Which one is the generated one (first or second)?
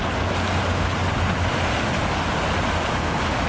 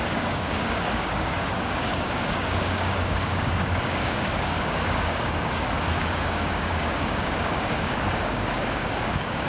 second